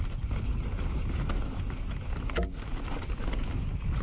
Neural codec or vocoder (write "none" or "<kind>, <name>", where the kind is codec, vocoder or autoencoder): none